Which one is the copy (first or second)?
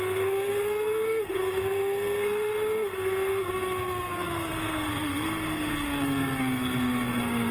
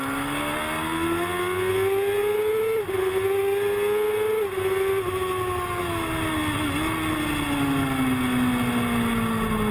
first